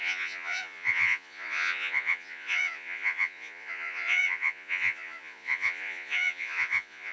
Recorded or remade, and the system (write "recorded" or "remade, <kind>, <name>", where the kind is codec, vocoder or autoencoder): remade, vocoder, Vocos